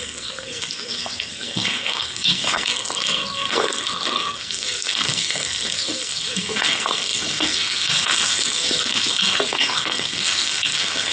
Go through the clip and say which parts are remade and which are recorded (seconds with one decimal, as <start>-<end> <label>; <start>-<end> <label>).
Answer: 0.0-11.1 remade